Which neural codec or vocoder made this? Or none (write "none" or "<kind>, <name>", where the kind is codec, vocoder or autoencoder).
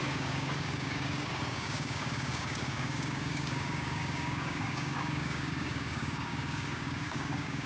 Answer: codec, DAC